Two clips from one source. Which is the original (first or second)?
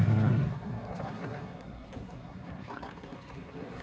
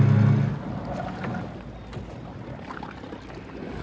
second